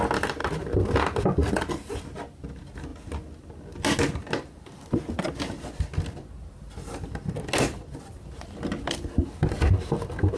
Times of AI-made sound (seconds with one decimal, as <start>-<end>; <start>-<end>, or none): none